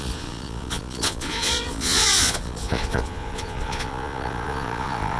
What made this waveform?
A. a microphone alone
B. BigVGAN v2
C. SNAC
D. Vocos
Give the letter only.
D